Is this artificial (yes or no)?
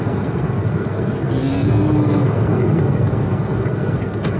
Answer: yes